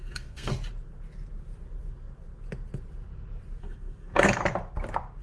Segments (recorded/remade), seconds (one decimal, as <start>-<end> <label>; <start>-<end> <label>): 0.0-0.5 remade; 0.5-3.6 recorded; 3.6-4.4 remade; 4.4-5.2 recorded